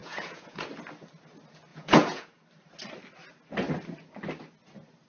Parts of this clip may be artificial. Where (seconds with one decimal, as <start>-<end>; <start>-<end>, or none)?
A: 0.0-0.7; 1.7-2.4